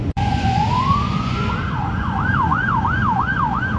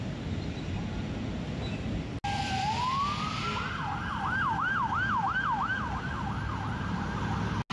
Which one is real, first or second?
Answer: second